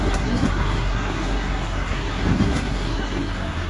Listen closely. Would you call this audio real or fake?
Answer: fake